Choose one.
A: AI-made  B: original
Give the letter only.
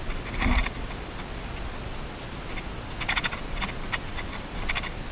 B